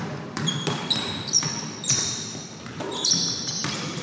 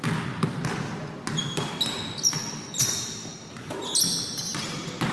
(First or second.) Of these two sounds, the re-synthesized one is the first